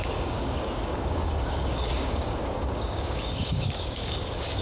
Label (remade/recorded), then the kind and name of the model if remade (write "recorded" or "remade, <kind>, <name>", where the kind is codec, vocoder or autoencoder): remade, codec, DAC